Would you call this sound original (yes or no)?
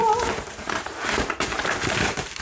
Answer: no